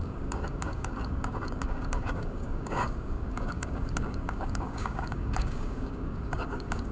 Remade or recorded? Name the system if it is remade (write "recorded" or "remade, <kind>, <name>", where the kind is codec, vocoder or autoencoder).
remade, codec, DAC